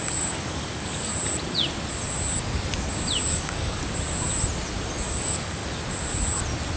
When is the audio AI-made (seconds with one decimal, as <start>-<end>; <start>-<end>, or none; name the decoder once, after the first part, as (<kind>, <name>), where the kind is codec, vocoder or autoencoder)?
0.0-1.1 (codec, DAC); 3.2-3.8; 5.1-5.6